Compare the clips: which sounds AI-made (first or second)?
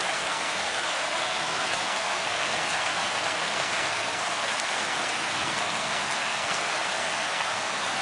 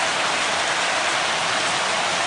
first